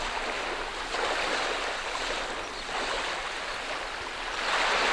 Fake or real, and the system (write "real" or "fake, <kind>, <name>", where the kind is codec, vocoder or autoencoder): real